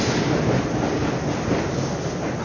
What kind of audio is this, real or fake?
real